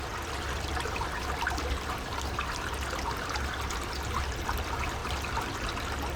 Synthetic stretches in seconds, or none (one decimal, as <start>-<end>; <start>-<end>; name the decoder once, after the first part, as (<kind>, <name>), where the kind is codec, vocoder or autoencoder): none